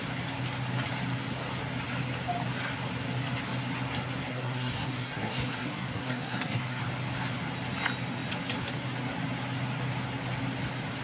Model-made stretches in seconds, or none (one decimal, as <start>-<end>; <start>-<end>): 4.3-6.8